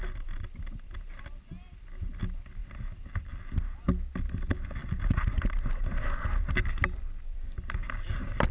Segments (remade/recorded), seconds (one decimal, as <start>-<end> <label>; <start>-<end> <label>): 0.0-2.6 recorded; 2.6-3.4 remade; 3.4-4.8 recorded; 4.8-6.5 remade; 6.5-7.8 recorded; 7.8-8.5 remade